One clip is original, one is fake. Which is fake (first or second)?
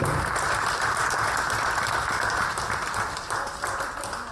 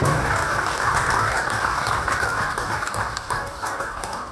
second